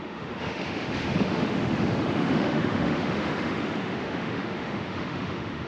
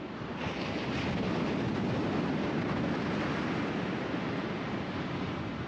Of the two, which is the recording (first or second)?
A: second